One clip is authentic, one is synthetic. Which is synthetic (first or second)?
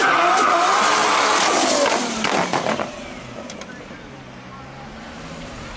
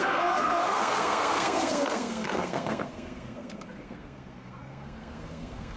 second